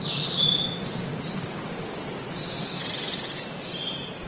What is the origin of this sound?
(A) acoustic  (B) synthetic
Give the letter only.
B